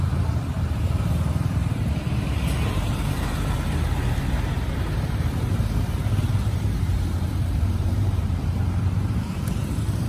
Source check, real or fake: fake